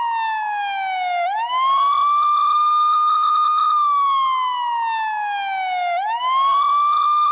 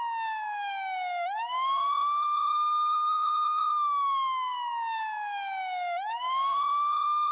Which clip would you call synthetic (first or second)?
second